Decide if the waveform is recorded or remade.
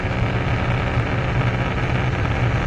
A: recorded